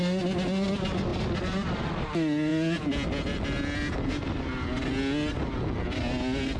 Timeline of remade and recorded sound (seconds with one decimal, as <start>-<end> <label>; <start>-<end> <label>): 0.0-6.6 recorded